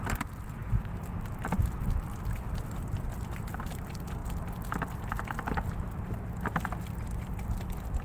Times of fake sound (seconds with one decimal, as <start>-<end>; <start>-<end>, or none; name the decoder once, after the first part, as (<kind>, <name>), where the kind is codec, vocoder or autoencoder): none